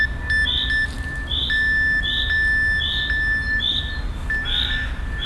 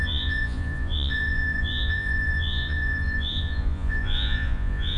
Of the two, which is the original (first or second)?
first